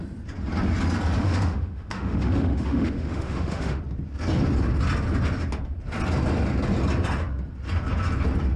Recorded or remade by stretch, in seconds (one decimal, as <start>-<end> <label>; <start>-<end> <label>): 0.0-1.2 recorded; 1.2-3.8 remade; 3.8-8.6 recorded